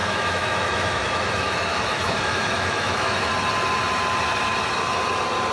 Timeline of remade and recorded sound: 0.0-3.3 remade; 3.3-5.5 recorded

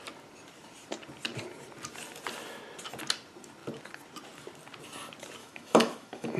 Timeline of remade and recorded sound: 0.0-5.4 recorded; 5.4-6.4 remade

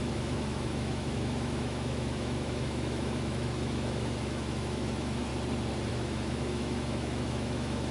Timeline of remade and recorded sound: 0.0-5.3 remade; 5.3-5.9 recorded; 5.9-7.9 remade

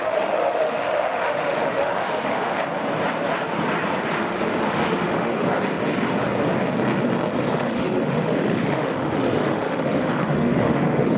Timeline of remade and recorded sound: 0.0-2.5 remade; 2.5-4.1 recorded; 4.1-5.3 remade; 5.3-7.5 recorded; 7.5-11.2 remade